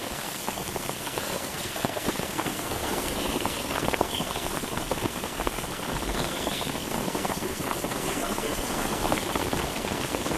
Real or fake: fake